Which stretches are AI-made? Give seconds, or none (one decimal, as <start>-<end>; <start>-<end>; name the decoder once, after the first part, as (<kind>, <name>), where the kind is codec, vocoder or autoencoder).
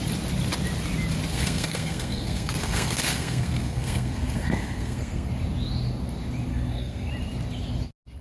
1.3-5.3 (codec, SNAC); 6.5-7.1